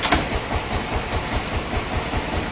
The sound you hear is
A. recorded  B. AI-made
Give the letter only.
B